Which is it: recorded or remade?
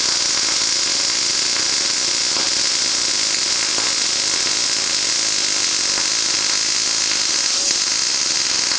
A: recorded